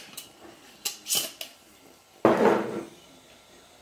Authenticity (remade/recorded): recorded